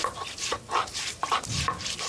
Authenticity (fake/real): real